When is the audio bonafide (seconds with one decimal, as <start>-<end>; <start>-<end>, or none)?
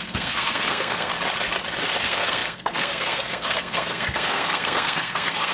1.1-2.0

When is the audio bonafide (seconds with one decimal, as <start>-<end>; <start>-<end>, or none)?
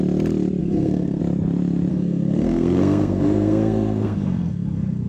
0.0-0.6; 1.2-1.9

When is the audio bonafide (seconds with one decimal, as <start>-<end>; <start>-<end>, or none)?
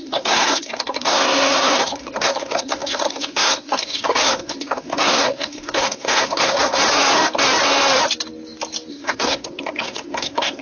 6.8-8.9